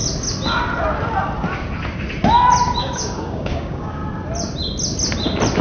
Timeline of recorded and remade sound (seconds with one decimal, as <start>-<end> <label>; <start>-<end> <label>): 0.0-2.8 recorded; 2.8-4.0 remade; 4.0-5.6 recorded